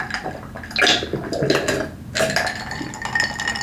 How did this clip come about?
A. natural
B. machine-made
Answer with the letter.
A